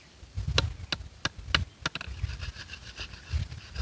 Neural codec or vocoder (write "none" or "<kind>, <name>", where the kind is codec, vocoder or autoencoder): none